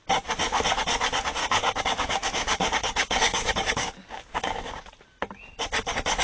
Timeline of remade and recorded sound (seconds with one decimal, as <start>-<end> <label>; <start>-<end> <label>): 0.0-1.4 recorded; 1.4-4.8 remade; 4.8-6.2 recorded